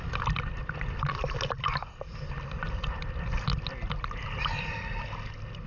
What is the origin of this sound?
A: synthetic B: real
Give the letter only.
B